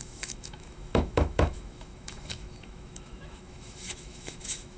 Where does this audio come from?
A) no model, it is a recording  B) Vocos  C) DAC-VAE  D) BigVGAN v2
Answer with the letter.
C